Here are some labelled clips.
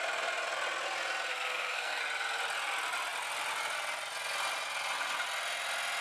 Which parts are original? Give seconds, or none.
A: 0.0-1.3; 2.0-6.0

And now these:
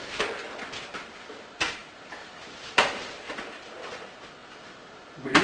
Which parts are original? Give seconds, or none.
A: 0.0-1.8; 3.9-5.4